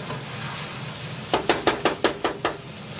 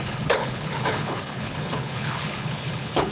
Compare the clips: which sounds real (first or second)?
first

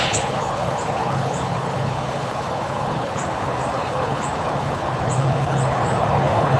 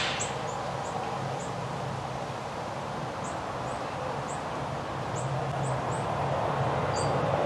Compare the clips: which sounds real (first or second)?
second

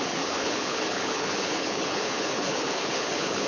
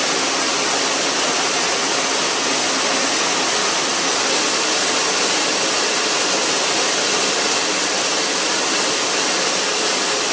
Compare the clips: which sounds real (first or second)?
second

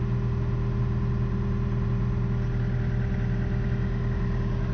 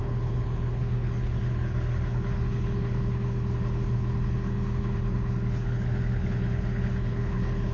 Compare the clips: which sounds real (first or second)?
first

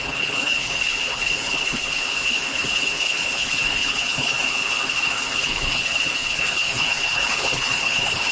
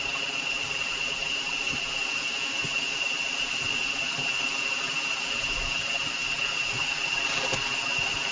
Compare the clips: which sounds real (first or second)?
second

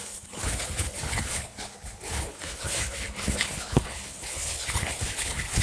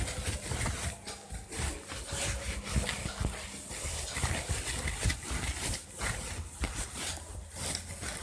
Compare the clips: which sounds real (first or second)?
second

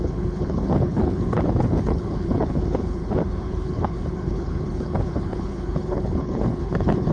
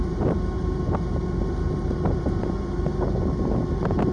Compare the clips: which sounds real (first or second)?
second